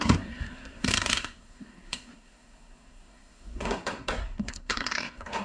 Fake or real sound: fake